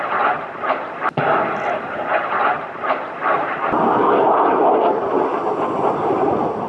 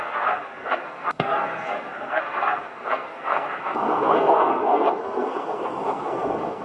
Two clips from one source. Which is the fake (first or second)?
second